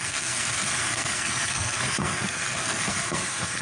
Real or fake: fake